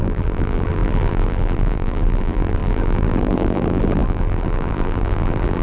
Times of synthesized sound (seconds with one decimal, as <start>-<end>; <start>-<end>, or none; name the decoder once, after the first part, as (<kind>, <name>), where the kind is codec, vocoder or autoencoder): 0.0-5.6 (vocoder, BigVGAN v2)